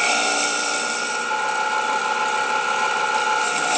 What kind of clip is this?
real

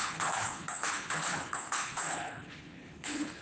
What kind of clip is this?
fake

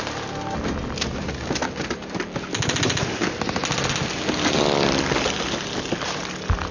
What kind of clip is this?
real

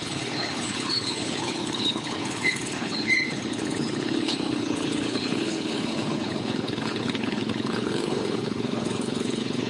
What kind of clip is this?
fake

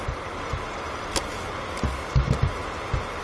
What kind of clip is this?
real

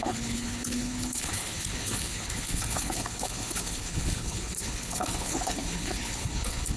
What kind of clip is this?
fake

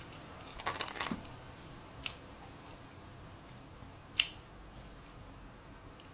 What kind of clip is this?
real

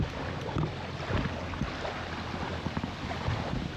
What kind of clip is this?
real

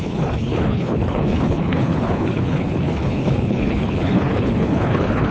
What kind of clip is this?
fake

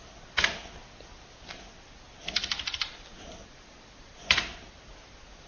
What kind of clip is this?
real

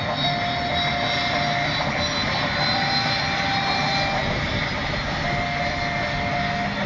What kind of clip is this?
real